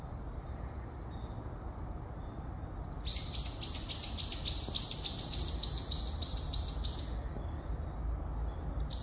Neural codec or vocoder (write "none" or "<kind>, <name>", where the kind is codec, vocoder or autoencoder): none